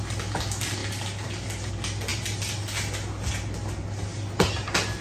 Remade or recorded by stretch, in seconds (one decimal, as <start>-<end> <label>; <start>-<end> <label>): 0.0-5.0 recorded